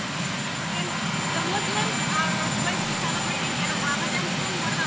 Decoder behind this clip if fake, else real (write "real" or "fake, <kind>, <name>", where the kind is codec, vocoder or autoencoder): real